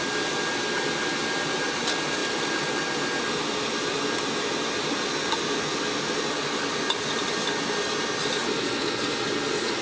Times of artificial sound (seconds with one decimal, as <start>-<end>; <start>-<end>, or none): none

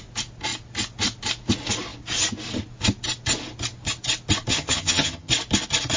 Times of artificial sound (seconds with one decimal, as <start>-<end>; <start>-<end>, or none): 4.5-5.3

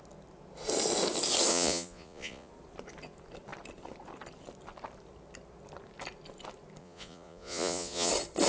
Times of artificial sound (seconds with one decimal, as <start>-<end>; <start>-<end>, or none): 1.5-2.5; 6.8-8.1

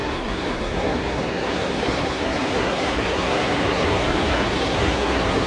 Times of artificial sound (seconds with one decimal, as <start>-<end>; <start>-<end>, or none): 0.0-5.5